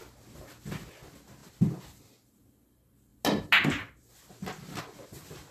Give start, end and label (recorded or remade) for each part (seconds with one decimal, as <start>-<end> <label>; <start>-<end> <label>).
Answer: 0.0-5.5 recorded